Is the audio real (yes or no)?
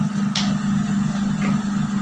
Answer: yes